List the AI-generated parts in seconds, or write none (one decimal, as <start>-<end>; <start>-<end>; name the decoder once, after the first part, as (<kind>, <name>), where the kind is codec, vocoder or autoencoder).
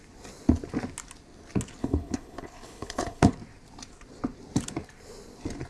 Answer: 1.8-3.3 (codec, HILCodec)